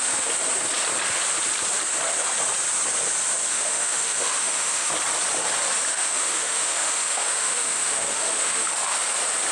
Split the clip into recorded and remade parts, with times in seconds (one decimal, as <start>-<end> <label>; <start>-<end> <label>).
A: 0.0-3.5 recorded; 3.5-4.9 remade; 4.9-5.9 recorded; 5.9-8.8 remade; 8.8-9.5 recorded